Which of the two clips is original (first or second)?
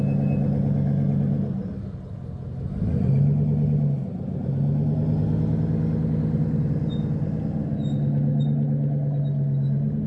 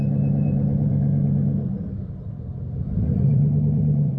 first